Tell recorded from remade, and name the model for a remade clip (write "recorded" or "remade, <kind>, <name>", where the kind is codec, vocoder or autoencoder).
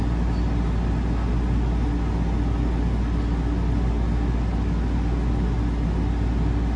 recorded